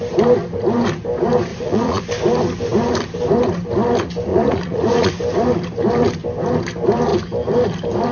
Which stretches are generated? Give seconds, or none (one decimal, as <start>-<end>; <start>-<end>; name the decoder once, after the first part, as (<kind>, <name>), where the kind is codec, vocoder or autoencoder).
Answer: 1.5-2.0 (vocoder, Vocos); 4.3-5.1

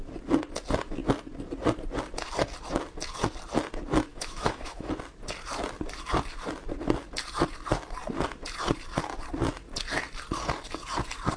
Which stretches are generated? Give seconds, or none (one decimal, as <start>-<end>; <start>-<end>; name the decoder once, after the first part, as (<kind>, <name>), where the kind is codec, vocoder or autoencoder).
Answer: 4.1-4.9 (autoencoder, DAC-VAE)